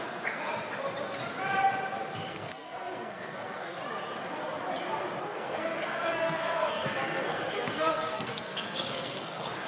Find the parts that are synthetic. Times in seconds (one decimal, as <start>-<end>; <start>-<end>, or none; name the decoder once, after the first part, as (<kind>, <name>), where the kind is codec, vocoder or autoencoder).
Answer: 0.0-0.5 (codec, SNAC); 2.3-3.8; 5.2-9.7